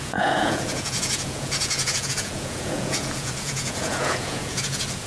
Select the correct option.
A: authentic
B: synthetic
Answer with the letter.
B